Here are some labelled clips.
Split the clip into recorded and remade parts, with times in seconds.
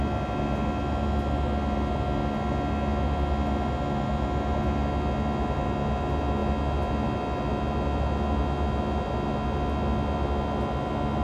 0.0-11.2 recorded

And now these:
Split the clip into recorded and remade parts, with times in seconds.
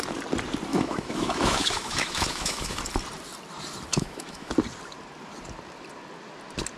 0.0-0.7 recorded; 0.7-2.8 remade; 2.8-3.9 recorded; 3.9-4.5 remade; 4.5-6.8 recorded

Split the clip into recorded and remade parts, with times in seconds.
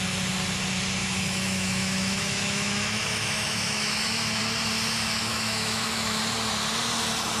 0.0-1.0 recorded; 1.0-4.4 remade; 4.4-5.3 recorded; 5.3-6.2 remade; 6.2-7.4 recorded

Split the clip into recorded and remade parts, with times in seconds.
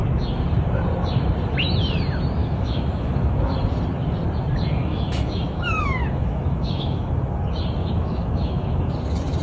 0.0-2.4 recorded; 2.4-3.5 remade; 3.5-4.8 recorded; 4.8-7.2 remade; 7.2-7.8 recorded; 7.8-8.8 remade; 8.8-9.4 recorded